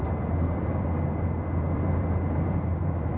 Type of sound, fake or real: fake